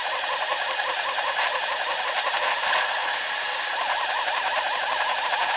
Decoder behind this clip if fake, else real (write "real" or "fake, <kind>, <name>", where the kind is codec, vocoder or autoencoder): real